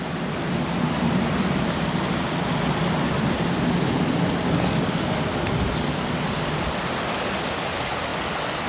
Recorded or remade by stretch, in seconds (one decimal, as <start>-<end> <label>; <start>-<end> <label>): 0.0-8.7 recorded